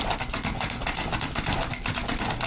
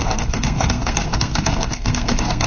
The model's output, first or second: second